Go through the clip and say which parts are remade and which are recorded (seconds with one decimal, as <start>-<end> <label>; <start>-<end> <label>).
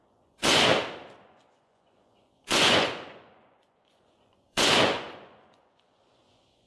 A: 0.0-0.7 remade; 0.7-1.2 recorded; 1.2-6.7 remade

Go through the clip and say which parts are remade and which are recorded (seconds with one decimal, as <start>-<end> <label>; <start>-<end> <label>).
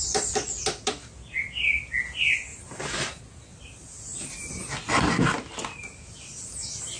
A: 0.0-7.0 recorded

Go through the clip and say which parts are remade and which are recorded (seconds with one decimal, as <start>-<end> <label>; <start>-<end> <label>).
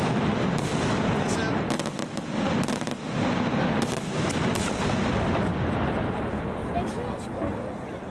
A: 0.0-8.1 recorded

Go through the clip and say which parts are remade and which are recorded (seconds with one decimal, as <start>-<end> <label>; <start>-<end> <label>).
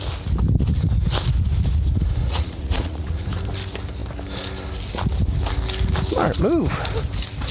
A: 0.0-2.2 recorded; 2.2-3.4 remade; 3.4-7.5 recorded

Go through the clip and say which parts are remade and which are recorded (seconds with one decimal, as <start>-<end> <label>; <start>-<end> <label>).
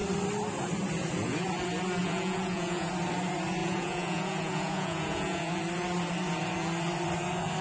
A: 0.0-2.0 recorded; 2.0-2.9 remade; 2.9-3.6 recorded; 3.6-5.5 remade; 5.5-7.6 recorded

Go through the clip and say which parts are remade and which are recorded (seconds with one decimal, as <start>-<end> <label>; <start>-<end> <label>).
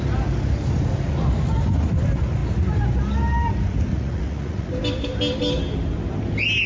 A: 0.0-3.9 recorded; 3.9-4.7 remade; 4.7-6.7 recorded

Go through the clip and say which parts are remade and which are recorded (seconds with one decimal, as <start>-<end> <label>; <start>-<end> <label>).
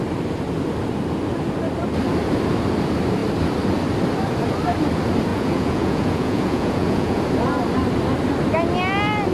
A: 0.0-5.3 recorded; 5.3-7.2 remade; 7.2-9.3 recorded